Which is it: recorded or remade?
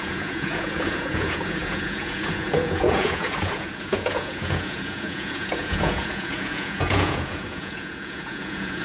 remade